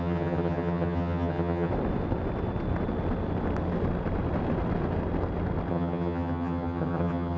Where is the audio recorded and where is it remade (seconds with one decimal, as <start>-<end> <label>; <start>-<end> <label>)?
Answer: 0.0-1.7 remade; 1.7-5.7 recorded; 5.7-7.4 remade